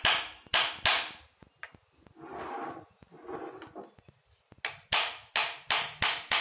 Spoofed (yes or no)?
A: no